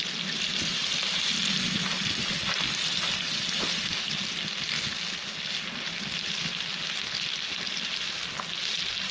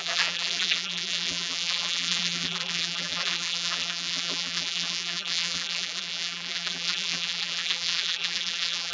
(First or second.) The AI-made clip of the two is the second